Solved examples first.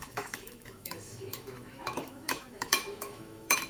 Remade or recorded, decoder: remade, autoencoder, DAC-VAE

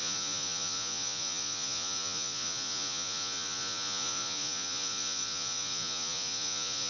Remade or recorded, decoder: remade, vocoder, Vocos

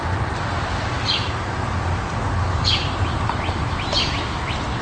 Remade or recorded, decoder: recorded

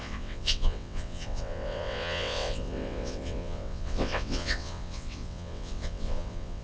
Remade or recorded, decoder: remade, vocoder, WaveNeXt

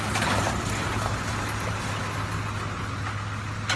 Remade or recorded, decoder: recorded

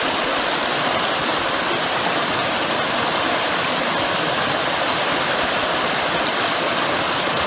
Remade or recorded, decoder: recorded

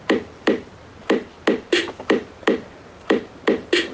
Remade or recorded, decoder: recorded